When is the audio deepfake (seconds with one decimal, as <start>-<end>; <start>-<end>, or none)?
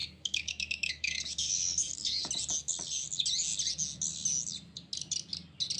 0.0-2.3